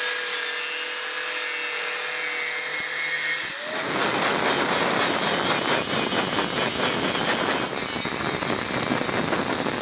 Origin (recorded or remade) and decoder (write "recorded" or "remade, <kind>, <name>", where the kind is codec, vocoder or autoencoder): recorded